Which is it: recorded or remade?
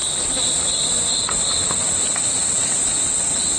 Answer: recorded